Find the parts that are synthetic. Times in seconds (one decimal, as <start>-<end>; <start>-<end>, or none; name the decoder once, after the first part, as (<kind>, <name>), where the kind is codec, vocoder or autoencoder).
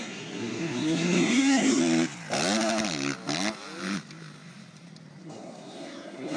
0.0-1.8 (codec, SNAC); 5.2-6.4